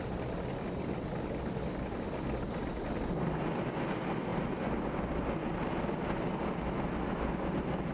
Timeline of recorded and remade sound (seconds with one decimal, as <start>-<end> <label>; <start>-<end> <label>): 0.0-7.9 recorded